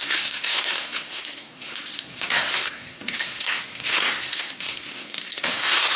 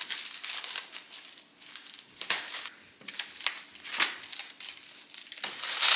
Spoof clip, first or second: first